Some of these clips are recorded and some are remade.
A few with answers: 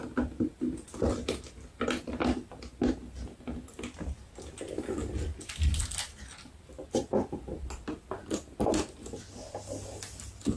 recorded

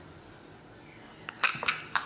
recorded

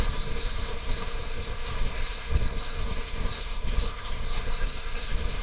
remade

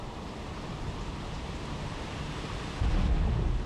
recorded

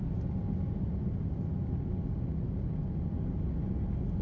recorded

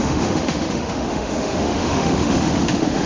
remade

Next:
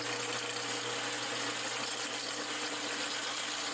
recorded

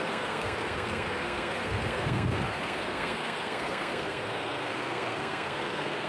remade